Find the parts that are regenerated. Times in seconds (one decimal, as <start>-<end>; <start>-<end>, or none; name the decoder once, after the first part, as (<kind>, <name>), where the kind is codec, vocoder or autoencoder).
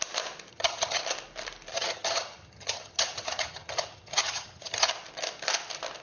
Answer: 0.5-1.0 (vocoder, HiFi-GAN); 1.7-4.9